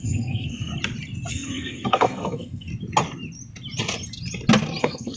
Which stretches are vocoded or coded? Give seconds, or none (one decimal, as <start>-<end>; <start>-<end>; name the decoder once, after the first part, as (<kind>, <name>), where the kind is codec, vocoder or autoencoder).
0.0-0.7 (codec, SNAC); 1.3-2.7; 4.8-5.2